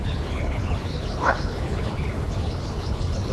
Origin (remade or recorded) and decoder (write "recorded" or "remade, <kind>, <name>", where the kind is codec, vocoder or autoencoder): remade, codec, HILCodec